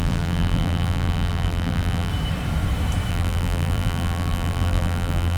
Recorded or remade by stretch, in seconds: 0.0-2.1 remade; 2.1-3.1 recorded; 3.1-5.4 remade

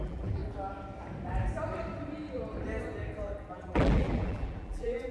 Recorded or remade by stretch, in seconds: 0.0-0.4 remade; 0.4-3.5 recorded; 3.5-5.1 remade

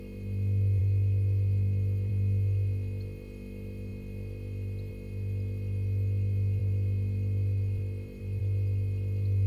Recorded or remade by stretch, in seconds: 0.0-0.8 recorded; 0.8-2.1 remade; 2.1-6.6 recorded; 6.6-8.4 remade; 8.4-9.5 recorded

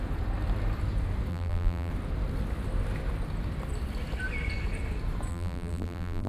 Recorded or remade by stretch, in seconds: 0.0-1.3 recorded; 1.3-1.9 remade; 1.9-5.3 recorded; 5.3-6.3 remade

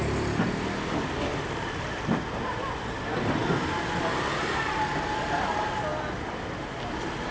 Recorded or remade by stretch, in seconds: 0.0-1.3 recorded; 1.3-2.1 remade; 2.1-3.4 recorded; 3.4-4.6 remade; 4.6-7.3 recorded

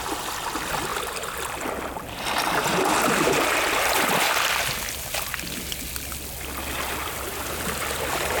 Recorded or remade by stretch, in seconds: 0.0-7.0 recorded; 7.0-8.4 remade